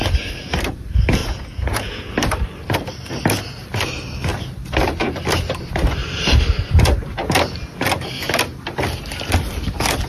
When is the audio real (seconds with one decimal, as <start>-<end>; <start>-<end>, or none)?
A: 0.0-1.2; 2.1-10.1